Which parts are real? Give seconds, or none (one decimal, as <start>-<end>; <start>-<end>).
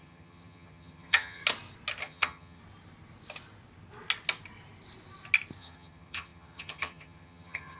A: 1.4-2.0; 2.6-5.6